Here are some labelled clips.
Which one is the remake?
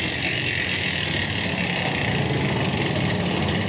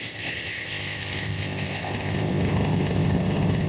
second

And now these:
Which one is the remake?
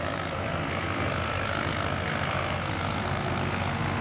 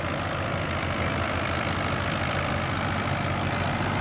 first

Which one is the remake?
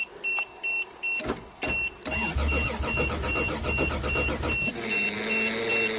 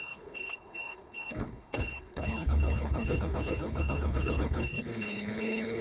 second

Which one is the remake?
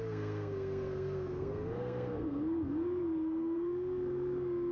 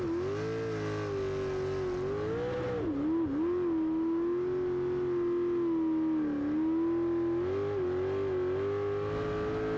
first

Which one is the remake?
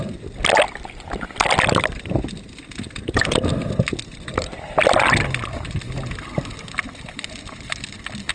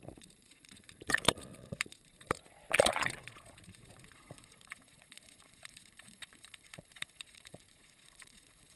second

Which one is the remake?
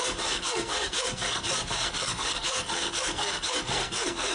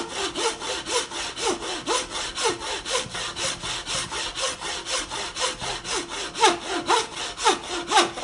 first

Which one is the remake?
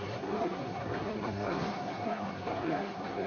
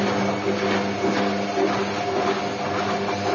first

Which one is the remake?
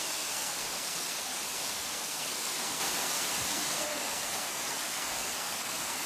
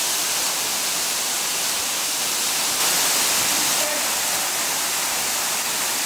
first